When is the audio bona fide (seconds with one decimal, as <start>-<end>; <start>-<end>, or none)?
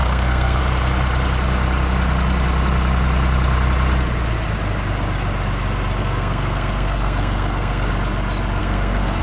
0.6-6.0; 7.9-8.6